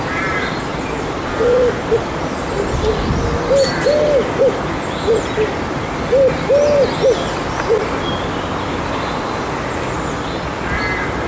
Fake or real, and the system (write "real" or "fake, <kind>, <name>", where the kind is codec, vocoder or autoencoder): real